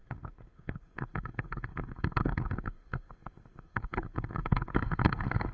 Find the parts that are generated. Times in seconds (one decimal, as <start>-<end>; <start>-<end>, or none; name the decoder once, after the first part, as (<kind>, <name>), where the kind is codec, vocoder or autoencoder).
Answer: 0.0-5.5 (codec, SNAC)